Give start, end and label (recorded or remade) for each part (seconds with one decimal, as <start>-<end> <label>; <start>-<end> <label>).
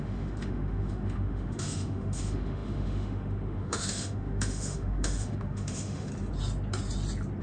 0.0-6.1 remade; 6.1-7.4 recorded